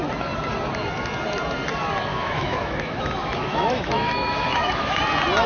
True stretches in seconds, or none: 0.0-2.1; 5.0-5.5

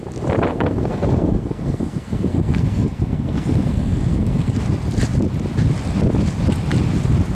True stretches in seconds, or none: 0.0-0.5; 4.6-7.3

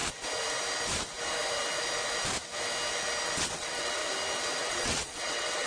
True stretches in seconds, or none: 0.0-3.4; 4.0-4.6